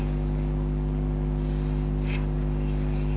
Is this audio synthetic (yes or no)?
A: no